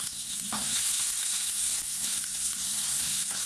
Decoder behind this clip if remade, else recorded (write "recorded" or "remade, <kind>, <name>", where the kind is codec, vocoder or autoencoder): remade, codec, SNAC